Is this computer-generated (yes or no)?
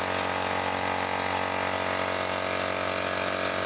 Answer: no